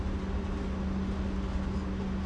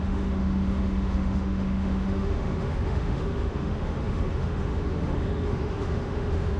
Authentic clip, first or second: first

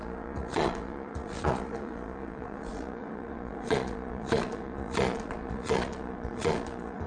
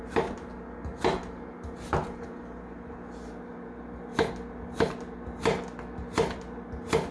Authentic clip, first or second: second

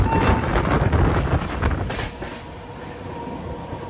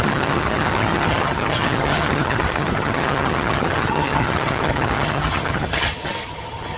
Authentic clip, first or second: first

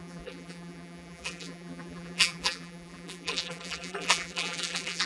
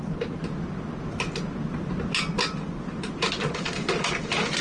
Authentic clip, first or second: second